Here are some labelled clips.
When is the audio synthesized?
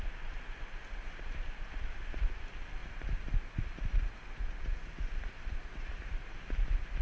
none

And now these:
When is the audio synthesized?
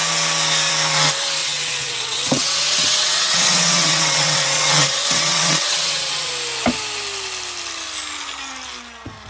1.4-6.3 (vocoder, WaveNeXt)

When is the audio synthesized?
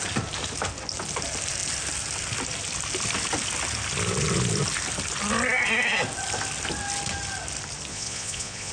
7.9-8.7 (vocoder, Vocos)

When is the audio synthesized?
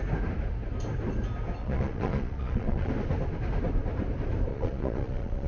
1.6-2.9 (vocoder, Vocos); 4.5-5.5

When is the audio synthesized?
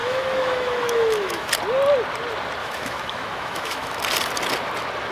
0.0-1.5 (autoencoder, DAC-VAE); 2.6-4.0